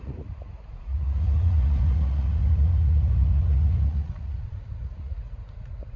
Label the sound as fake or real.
fake